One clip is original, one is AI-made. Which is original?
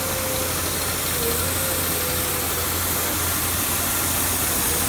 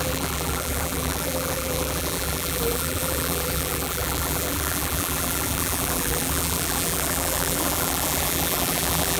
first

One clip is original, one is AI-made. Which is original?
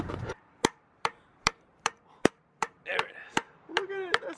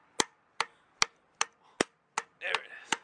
second